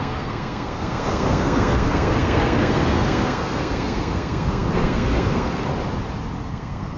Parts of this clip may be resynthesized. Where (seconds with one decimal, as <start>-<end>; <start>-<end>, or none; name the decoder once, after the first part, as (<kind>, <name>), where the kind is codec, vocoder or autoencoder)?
0.0-5.7 (codec, SNAC); 6.5-7.0